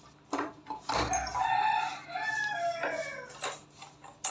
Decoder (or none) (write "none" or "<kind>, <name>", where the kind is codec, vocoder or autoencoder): none